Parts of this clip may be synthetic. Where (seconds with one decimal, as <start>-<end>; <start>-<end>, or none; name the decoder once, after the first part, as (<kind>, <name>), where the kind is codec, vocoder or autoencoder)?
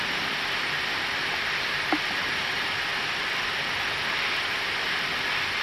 0.0-5.6 (vocoder, BigVGAN v2)